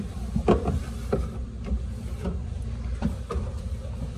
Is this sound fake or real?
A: fake